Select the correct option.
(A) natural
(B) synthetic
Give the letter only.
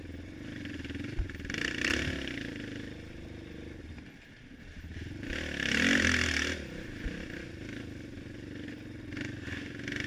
A